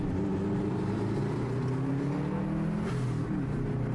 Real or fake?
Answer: real